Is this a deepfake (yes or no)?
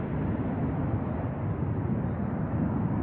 no